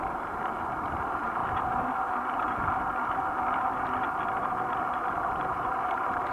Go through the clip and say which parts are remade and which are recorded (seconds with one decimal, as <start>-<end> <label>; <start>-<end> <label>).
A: 0.0-1.4 remade; 1.4-4.8 recorded; 4.8-6.3 remade